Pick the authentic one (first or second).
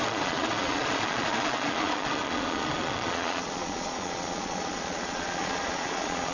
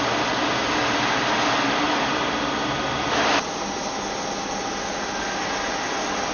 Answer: second